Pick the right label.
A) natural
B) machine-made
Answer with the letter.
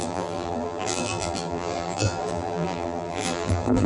B